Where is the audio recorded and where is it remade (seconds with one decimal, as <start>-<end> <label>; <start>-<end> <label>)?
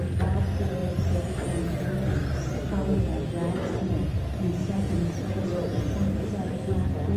0.0-0.8 recorded; 0.8-2.5 remade; 2.5-5.5 recorded; 5.5-6.3 remade; 6.3-7.2 recorded